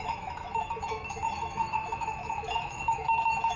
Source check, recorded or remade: remade